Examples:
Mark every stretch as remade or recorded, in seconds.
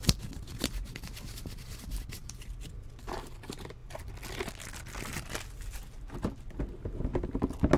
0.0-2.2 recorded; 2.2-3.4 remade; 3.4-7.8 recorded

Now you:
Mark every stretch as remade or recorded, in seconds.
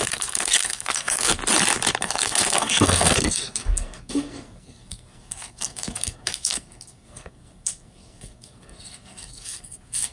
0.0-1.4 remade; 1.4-2.0 recorded; 2.0-10.1 remade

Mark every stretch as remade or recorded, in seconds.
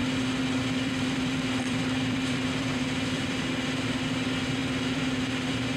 0.0-3.5 remade; 3.5-4.6 recorded; 4.6-5.8 remade